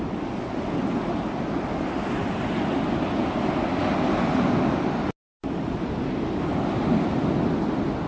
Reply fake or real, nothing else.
real